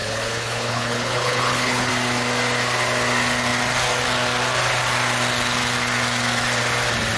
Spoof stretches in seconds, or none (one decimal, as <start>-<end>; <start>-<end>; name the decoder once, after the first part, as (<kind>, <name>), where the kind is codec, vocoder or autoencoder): 0.0-1.9 (codec, HILCodec)